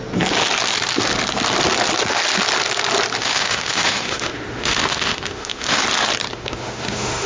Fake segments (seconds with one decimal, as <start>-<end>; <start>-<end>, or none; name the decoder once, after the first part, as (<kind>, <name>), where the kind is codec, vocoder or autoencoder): 3.2-5.8 (autoencoder, DAC-VAE); 6.3-7.3